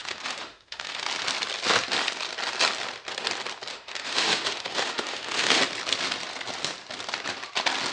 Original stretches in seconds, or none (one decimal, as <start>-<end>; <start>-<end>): 1.0-3.7; 5.6-7.9

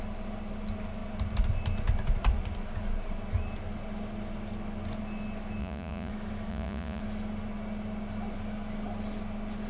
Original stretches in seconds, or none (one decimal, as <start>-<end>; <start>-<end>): 0.0-5.6; 6.1-6.5; 7.0-9.7

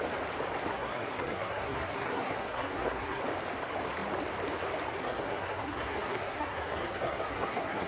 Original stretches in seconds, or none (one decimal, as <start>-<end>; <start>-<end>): 0.0-0.7; 3.2-5.0

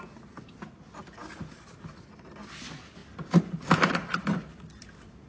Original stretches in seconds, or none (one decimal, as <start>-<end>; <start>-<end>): 0.0-5.3

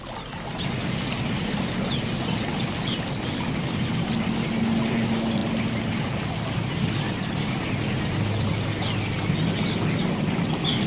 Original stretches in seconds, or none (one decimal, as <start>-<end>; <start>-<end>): 0.0-10.9